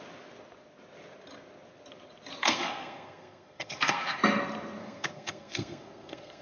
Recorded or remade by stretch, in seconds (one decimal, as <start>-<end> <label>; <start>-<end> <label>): 0.0-2.4 recorded; 2.4-4.2 remade; 4.2-4.8 recorded; 4.8-6.4 remade